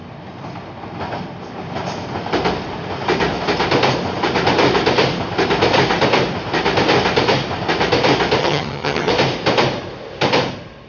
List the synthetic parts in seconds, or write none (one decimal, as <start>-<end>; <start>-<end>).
8.4-9.1